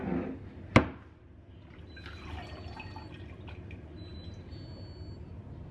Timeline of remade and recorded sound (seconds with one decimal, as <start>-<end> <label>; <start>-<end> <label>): 0.0-5.7 recorded